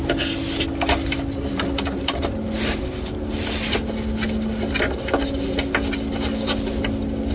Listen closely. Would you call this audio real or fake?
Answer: real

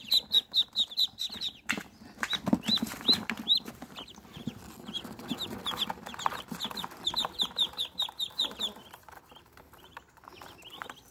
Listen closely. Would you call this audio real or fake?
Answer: fake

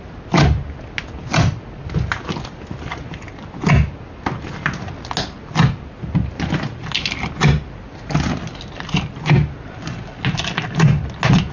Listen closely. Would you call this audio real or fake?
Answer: real